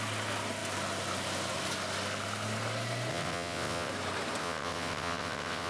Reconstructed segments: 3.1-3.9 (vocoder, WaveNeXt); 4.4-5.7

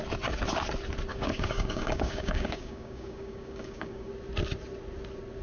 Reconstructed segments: 1.1-4.1 (codec, DAC)